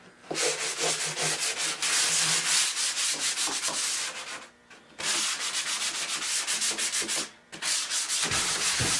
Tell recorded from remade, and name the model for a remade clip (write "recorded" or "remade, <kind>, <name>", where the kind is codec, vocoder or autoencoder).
recorded